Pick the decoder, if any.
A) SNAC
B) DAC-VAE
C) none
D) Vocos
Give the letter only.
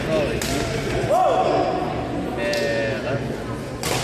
C